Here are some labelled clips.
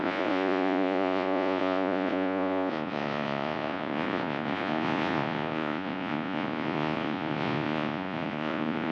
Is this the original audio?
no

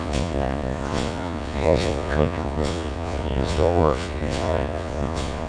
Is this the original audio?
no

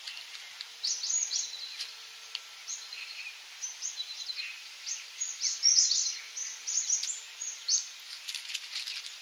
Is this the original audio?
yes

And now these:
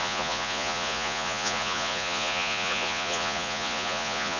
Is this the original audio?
no